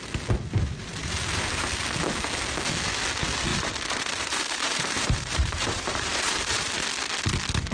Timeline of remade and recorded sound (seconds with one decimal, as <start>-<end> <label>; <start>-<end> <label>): 0.0-1.0 recorded; 1.0-1.6 remade; 1.6-3.5 recorded; 3.5-6.7 remade; 6.7-7.7 recorded